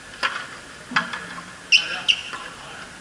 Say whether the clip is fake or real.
real